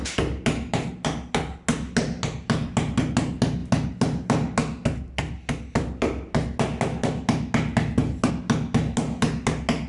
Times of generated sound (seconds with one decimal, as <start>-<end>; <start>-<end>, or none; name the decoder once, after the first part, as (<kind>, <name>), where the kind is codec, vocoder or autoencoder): none